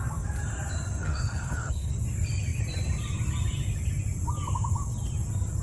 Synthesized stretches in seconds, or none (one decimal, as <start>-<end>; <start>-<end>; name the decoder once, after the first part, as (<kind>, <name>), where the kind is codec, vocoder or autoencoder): 1.0-1.9 (codec, HILCodec)